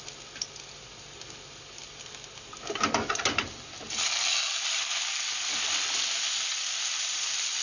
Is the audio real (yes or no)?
yes